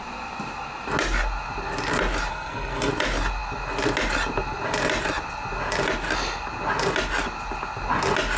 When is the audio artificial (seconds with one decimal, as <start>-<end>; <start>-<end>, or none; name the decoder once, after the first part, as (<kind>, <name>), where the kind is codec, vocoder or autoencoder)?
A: 2.3-2.9 (codec, SNAC)